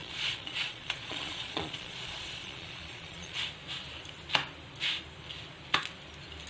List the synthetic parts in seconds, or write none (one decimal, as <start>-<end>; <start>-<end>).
0.0-3.4